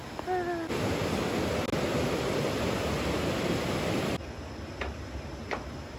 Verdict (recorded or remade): recorded